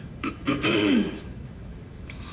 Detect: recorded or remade remade